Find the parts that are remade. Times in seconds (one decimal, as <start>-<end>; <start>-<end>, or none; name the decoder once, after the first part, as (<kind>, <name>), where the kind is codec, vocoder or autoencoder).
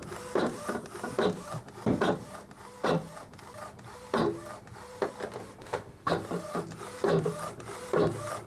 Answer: 5.6-6.1 (autoencoder, DAC-VAE)